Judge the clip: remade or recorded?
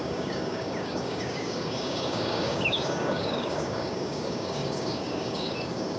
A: remade